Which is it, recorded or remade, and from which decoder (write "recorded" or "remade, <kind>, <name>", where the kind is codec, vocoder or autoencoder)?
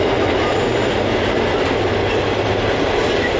recorded